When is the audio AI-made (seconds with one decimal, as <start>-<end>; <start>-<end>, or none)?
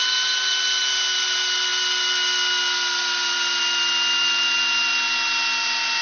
none